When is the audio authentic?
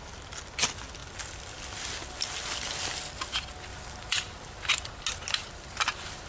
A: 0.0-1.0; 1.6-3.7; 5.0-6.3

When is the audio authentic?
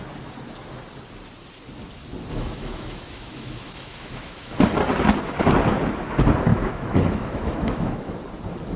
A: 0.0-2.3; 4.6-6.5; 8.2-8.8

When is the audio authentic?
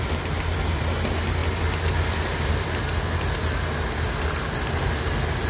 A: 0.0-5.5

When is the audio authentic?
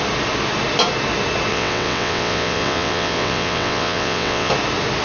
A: 0.0-1.5; 4.5-5.0